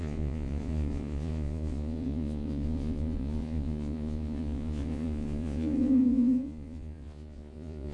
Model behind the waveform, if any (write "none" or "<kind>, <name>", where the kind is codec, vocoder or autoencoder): vocoder, Vocos